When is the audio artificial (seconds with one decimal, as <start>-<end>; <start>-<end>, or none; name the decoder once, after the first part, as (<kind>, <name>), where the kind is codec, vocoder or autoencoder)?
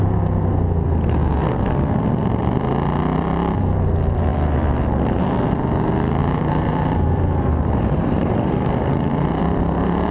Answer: 6.2-9.4 (vocoder, BigVGAN v2)